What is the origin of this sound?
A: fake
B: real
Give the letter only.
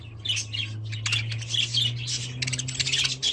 B